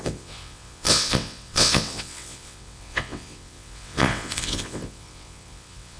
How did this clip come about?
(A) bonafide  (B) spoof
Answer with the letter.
B